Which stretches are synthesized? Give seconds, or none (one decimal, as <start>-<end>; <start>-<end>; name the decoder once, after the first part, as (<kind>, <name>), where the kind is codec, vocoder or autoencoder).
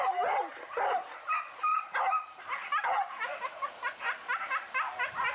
none